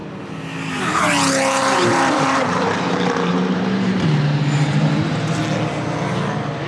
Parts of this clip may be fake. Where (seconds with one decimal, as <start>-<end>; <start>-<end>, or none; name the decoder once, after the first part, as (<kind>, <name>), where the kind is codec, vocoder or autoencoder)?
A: 1.6-5.4 (vocoder, BigVGAN v2)